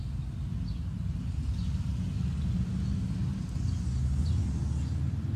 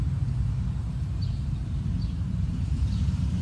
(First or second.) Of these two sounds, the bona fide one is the first